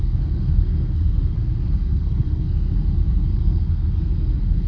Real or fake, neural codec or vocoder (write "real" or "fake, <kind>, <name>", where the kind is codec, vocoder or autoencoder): fake, codec, SNAC